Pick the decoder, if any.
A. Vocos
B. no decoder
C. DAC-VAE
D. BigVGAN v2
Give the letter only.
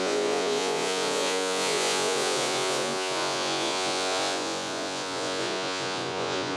A